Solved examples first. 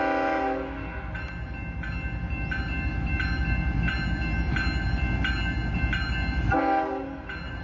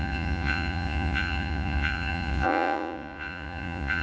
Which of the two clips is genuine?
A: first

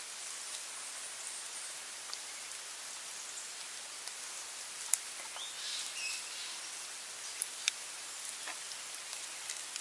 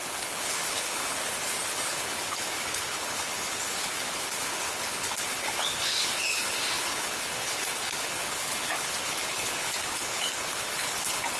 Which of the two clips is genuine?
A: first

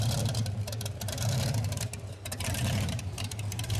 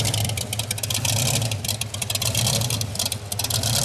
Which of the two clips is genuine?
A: second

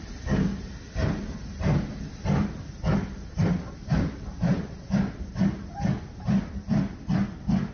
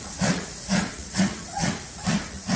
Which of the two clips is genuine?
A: first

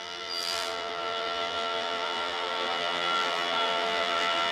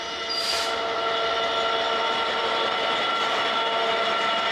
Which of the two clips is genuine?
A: second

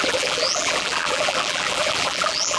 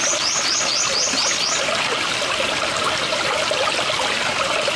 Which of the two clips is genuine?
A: second